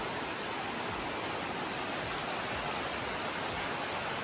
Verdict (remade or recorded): recorded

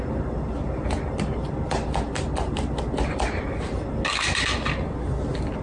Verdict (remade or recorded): recorded